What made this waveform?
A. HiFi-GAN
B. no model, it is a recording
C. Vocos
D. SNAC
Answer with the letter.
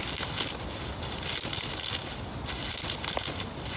B